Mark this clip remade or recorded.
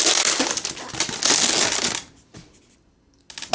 recorded